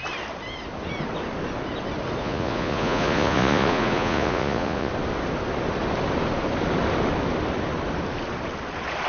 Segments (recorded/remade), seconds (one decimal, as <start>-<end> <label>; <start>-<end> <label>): 0.0-2.2 recorded; 2.2-4.9 remade; 4.9-9.1 recorded

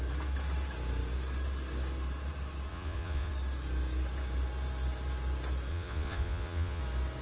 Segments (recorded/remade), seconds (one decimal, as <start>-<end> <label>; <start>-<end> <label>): 0.0-2.7 recorded; 2.7-3.3 remade; 3.3-5.7 recorded; 5.7-6.8 remade; 6.8-7.2 recorded

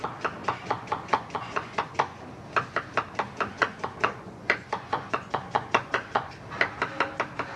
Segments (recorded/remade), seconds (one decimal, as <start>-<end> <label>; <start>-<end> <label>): 0.0-0.4 recorded; 0.4-2.2 remade; 2.2-3.5 recorded; 3.5-6.3 remade; 6.3-7.6 recorded

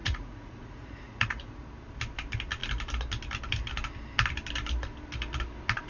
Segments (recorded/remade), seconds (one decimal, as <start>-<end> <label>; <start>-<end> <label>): 0.0-1.6 remade; 1.6-5.9 recorded

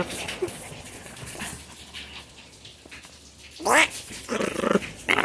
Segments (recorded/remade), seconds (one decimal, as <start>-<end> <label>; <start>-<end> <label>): 0.0-1.5 remade; 1.5-2.3 recorded; 2.3-2.7 remade; 2.7-3.9 recorded; 3.9-5.2 remade